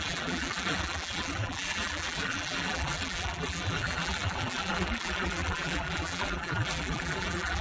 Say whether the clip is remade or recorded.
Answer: remade